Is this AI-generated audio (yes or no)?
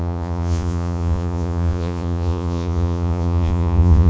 yes